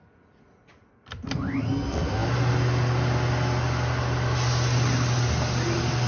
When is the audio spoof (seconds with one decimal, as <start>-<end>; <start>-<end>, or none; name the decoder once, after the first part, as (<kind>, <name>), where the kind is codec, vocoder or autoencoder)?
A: none